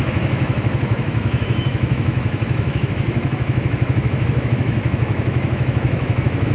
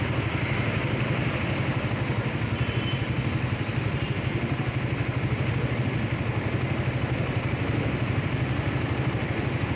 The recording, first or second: second